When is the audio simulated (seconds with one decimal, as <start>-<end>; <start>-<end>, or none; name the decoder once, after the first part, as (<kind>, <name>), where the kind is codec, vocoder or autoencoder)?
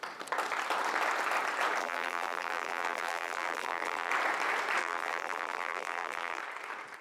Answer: 1.8-4.1 (vocoder, BigVGAN v2); 4.8-6.4